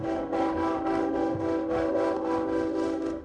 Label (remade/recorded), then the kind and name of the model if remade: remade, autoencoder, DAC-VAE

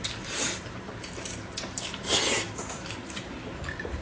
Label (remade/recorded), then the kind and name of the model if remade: remade, vocoder, BigVGAN v2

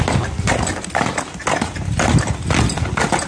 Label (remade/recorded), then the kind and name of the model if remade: recorded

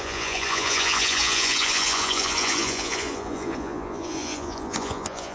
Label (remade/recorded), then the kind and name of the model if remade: remade, vocoder, Vocos